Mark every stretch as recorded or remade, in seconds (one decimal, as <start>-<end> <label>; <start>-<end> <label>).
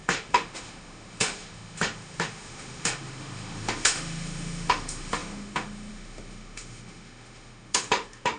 0.0-8.4 remade